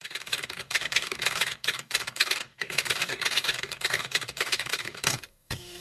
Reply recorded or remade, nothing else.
remade